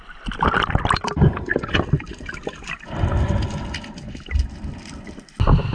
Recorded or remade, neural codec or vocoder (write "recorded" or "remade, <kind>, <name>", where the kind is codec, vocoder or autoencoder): recorded